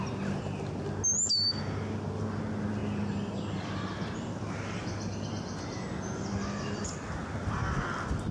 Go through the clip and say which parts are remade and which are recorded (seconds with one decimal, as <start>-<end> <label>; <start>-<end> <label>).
0.0-8.3 recorded

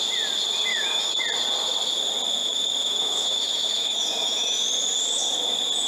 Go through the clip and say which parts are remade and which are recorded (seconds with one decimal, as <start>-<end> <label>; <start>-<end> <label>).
0.0-0.7 recorded; 0.7-1.2 remade; 1.2-2.4 recorded; 2.4-4.7 remade; 4.7-5.9 recorded